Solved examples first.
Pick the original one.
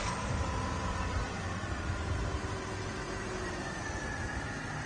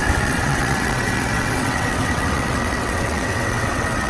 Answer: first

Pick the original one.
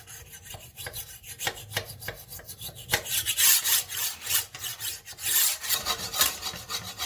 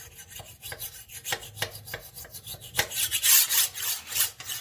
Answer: second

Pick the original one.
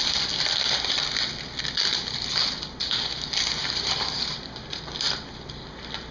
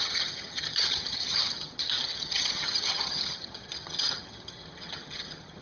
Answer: first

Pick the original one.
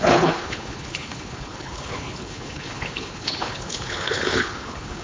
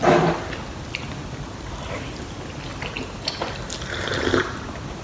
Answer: second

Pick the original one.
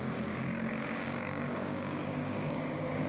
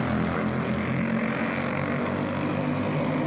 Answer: second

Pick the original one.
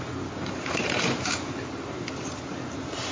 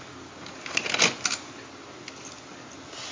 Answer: second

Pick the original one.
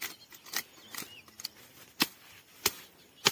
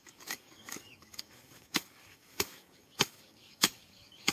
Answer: first